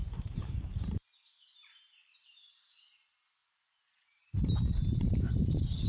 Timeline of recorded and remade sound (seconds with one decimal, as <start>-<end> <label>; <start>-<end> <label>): 0.0-2.6 remade; 2.6-3.4 recorded; 3.4-5.2 remade; 5.2-5.9 recorded